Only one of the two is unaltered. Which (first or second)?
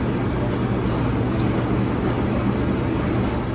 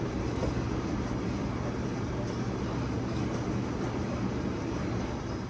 first